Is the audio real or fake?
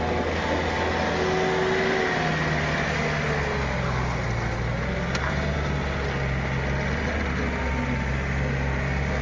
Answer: real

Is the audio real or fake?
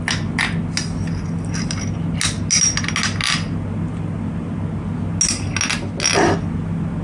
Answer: real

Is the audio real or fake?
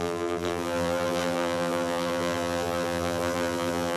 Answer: fake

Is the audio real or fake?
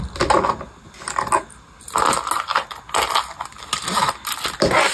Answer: real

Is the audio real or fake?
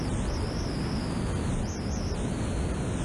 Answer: real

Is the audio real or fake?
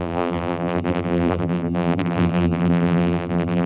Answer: fake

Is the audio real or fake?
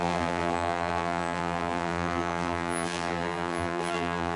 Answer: fake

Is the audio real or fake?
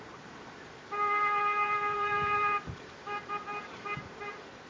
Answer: fake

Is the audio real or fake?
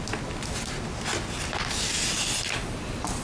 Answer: real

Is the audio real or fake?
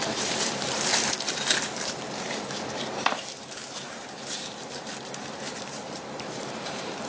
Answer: fake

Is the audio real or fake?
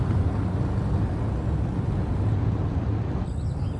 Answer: real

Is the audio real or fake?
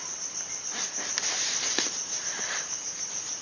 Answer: fake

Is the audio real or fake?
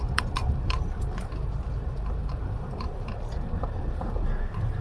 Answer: fake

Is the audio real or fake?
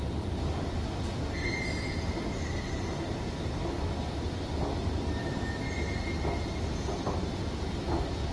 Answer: real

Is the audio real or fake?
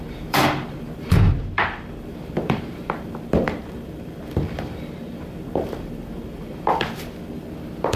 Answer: fake